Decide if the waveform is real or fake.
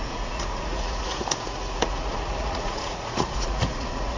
fake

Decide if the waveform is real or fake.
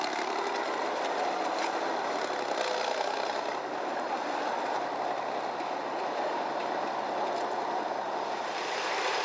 real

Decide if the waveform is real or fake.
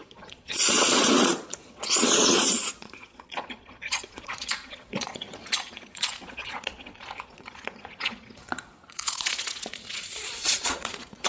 fake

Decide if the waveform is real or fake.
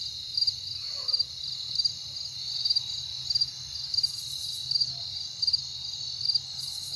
real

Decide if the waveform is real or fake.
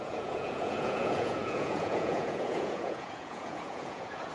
fake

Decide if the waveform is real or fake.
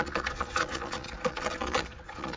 fake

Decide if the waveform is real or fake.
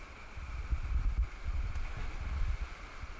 real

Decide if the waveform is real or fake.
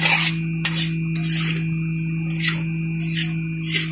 real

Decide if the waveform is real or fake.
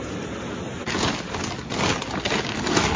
real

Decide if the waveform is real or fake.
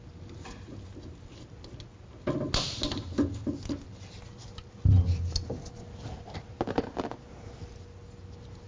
real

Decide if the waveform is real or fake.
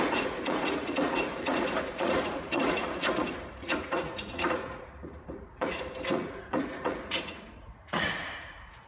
fake